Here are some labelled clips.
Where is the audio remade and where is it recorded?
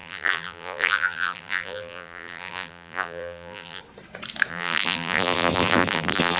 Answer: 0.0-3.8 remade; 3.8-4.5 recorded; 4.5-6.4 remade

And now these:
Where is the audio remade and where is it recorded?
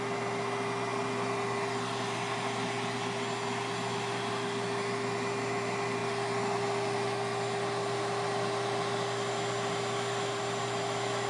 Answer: 0.0-11.3 recorded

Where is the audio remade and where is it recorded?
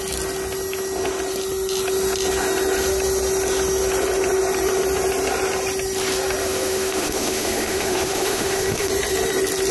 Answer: 0.0-6.4 recorded; 6.4-8.9 remade; 8.9-9.7 recorded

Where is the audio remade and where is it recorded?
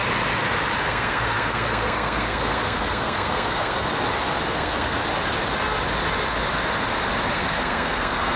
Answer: 0.0-0.8 recorded; 0.8-3.9 remade; 3.9-4.5 recorded; 4.5-5.0 remade; 5.0-7.3 recorded; 7.3-8.4 remade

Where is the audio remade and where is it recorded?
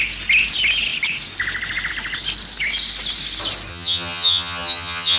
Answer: 0.0-3.7 recorded; 3.7-5.2 remade